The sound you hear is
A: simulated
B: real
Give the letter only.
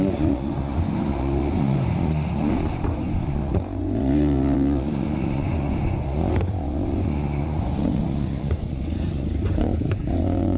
A